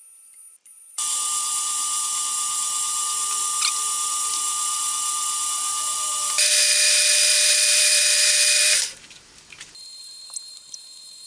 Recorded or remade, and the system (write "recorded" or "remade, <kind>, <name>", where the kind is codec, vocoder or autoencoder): remade, vocoder, BigVGAN v2